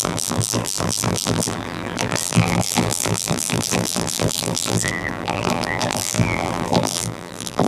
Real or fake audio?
fake